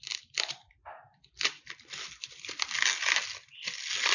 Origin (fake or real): real